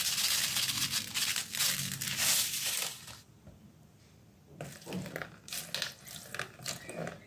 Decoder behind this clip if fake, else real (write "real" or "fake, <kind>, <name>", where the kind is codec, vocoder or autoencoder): real